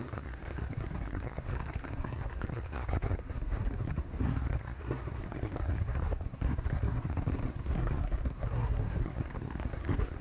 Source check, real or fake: fake